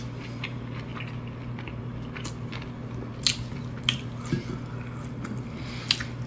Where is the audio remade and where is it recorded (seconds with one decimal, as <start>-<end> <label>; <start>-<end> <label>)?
0.0-6.3 recorded